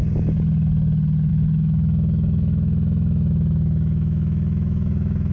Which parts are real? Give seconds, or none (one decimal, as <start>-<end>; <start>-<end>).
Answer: 0.0-1.3